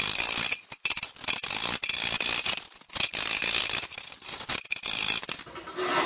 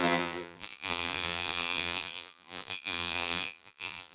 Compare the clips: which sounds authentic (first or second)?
first